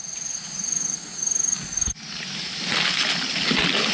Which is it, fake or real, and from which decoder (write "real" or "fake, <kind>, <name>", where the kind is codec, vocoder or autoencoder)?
real